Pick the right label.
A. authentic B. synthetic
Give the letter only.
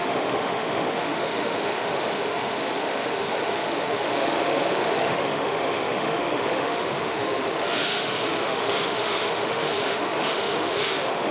B